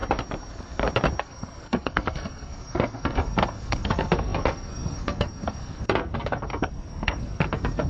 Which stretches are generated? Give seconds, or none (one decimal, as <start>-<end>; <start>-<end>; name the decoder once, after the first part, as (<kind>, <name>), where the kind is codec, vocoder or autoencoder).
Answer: 1.2-7.9 (codec, SNAC)

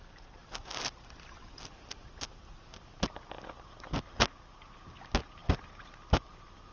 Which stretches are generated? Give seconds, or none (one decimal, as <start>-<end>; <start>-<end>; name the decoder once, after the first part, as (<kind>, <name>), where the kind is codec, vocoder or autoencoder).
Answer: none

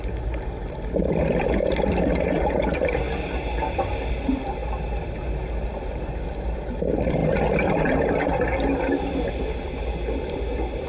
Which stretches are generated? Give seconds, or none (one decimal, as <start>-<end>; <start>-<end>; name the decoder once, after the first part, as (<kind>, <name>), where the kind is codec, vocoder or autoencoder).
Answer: none

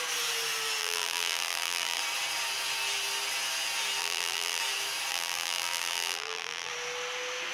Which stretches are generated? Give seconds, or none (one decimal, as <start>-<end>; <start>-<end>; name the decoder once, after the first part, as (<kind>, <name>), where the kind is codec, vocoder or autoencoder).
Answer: 0.8-2.0 (vocoder, BigVGAN v2); 4.0-4.6; 5.1-6.7

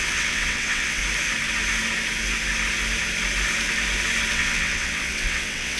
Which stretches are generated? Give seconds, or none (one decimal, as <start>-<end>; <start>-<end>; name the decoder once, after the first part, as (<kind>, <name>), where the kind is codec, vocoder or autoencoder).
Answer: 0.0-1.0 (vocoder, WaveNeXt); 4.3-5.8

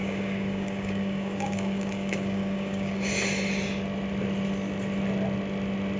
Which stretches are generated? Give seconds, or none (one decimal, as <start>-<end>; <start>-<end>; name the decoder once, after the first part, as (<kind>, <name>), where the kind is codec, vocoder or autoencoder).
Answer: 0.0-3.1 (codec, DAC)

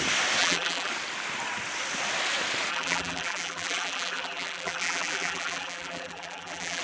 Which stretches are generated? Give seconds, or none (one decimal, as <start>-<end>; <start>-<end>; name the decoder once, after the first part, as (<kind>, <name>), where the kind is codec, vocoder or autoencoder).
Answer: 0.4-0.9 (vocoder, BigVGAN v2); 2.7-6.8

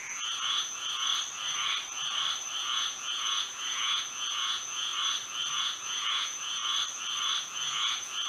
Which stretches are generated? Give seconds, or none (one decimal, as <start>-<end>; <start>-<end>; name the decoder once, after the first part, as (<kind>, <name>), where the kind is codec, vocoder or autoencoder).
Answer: 0.0-1.1 (vocoder, Vocos); 2.6-4.9; 5.6-6.6; 7.4-8.3